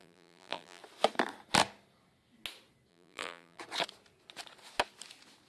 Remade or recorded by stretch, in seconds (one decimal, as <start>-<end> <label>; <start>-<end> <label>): 0.0-0.8 remade; 0.8-2.9 recorded; 2.9-3.6 remade; 3.6-5.5 recorded

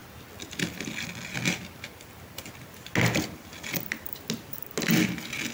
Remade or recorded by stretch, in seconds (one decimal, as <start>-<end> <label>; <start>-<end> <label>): 0.0-5.5 recorded

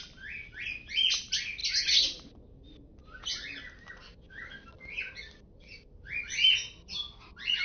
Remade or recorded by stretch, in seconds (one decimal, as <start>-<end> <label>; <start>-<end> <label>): 0.0-7.6 recorded